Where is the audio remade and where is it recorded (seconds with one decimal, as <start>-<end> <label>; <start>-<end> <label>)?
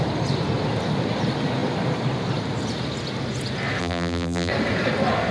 0.0-3.8 recorded; 3.8-4.5 remade; 4.5-5.3 recorded